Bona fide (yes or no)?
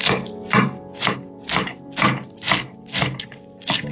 yes